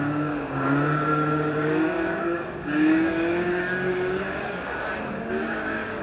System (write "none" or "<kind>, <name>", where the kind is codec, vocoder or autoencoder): codec, DAC